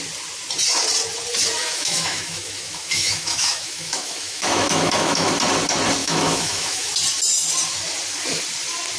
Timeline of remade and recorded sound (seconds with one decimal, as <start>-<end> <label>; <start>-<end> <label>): 0.0-1.6 recorded; 1.6-5.3 remade; 5.3-6.0 recorded; 6.0-6.9 remade; 6.9-9.0 recorded